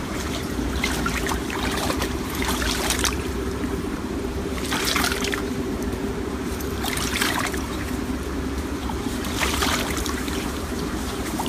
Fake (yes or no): yes